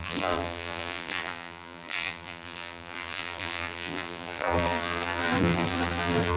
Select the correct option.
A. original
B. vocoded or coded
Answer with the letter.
B